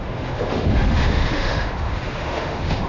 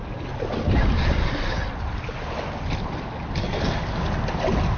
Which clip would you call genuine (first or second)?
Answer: second